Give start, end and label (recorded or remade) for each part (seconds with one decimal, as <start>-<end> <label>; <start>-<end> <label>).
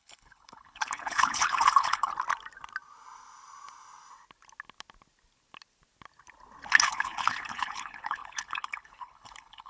0.0-2.1 remade; 2.1-6.7 recorded; 6.7-9.7 remade